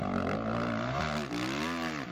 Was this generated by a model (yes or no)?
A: no